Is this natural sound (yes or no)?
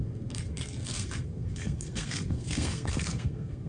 no